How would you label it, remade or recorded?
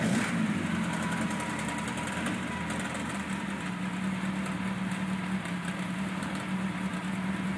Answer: recorded